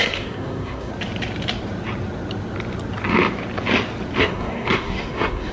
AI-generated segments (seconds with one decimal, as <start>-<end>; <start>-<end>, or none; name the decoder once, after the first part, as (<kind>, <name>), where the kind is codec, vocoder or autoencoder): 0.0-0.9 (codec, SNAC); 4.2-5.5